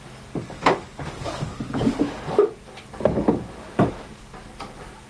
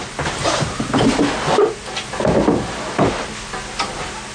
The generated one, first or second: first